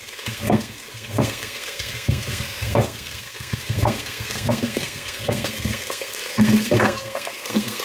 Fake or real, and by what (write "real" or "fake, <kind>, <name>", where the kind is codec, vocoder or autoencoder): fake, codec, SNAC